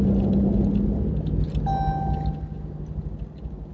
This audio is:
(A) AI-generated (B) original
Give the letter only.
B